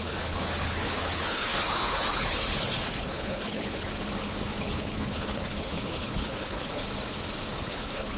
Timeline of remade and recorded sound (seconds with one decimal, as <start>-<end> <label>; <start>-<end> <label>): 0.0-3.9 remade; 3.9-4.6 recorded; 4.6-6.8 remade; 6.8-7.7 recorded; 7.7-8.2 remade